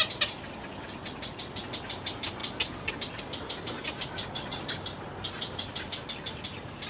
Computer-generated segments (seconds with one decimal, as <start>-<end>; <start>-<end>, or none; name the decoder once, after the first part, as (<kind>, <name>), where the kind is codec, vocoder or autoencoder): none